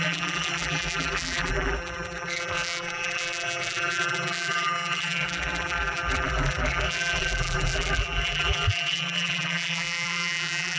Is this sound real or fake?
fake